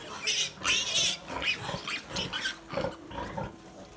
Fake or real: real